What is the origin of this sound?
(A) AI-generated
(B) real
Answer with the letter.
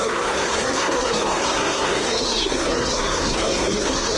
A